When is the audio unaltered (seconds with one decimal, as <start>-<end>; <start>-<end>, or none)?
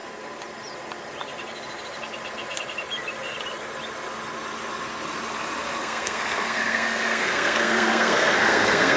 0.0-5.8